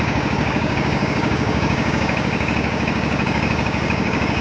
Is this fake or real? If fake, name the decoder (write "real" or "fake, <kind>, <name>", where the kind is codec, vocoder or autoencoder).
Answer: fake, codec, DAC